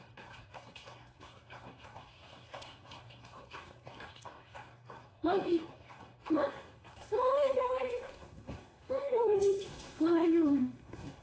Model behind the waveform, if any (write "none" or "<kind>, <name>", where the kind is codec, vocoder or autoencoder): codec, SNAC